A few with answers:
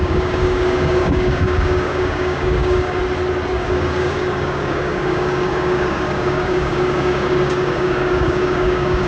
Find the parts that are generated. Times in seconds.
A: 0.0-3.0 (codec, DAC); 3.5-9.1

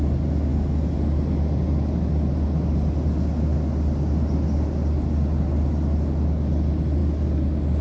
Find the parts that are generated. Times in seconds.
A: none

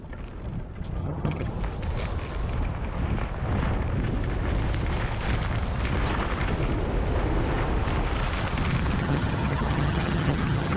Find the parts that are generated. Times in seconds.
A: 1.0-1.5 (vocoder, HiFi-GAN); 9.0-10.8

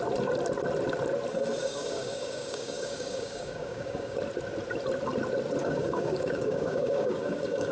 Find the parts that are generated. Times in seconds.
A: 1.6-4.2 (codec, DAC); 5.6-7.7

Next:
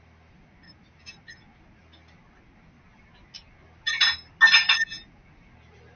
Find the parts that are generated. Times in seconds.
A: none

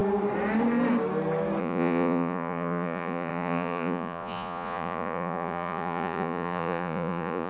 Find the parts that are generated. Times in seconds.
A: 1.6-7.5 (vocoder, Vocos)

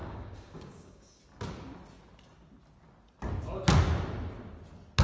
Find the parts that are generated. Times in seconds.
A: 0.0-1.2 (codec, DAC)